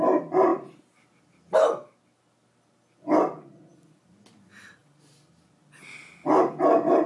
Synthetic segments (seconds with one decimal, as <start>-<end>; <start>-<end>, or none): none